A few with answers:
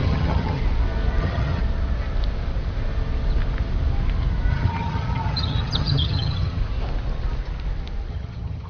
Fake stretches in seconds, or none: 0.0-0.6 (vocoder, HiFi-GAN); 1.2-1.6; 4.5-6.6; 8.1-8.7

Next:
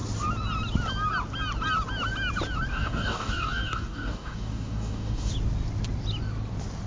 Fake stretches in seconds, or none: 2.7-5.3 (codec, DAC)

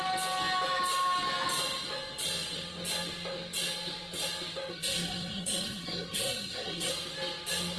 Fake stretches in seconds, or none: 4.7-6.9 (codec, SNAC)

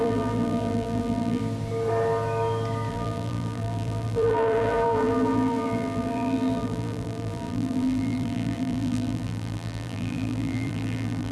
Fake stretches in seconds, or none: 0.0-1.4 (vocoder, BigVGAN v2); 2.9-11.3

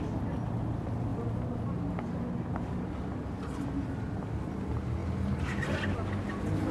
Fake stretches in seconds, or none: none

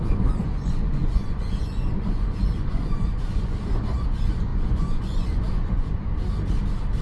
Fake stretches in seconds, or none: 0.0-6.1 (vocoder, Vocos)

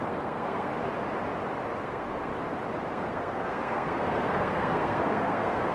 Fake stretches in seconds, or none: 0.0-0.7 (codec, SNAC); 1.8-2.3; 2.9-5.7

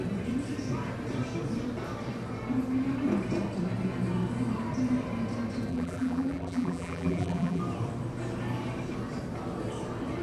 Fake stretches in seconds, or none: 5.7-7.6 (vocoder, BigVGAN v2)